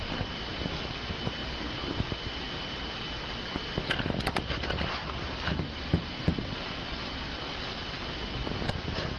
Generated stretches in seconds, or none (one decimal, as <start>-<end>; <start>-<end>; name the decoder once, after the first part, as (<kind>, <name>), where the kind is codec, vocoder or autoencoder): 1.4-1.9 (vocoder, BigVGAN v2)